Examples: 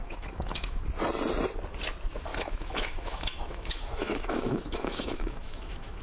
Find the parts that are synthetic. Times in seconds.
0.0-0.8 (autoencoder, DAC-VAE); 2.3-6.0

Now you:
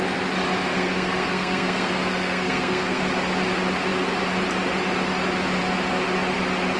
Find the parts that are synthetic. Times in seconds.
0.7-3.0 (codec, SNAC)

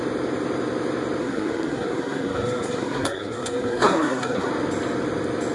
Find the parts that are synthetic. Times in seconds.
1.2-4.5 (codec, SNAC)

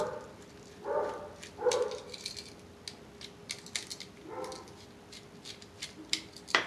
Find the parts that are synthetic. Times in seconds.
none

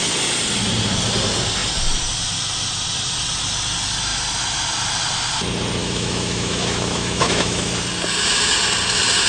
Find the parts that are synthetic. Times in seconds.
5.8-7.7 (autoencoder, DAC-VAE)

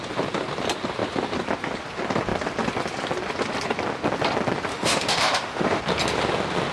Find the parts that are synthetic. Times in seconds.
4.7-5.8 (autoencoder, DAC-VAE)

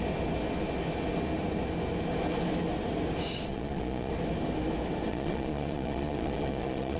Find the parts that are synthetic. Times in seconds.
3.5-4.1 (vocoder, Vocos); 5.1-7.0